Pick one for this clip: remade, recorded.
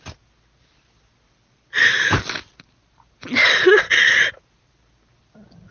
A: recorded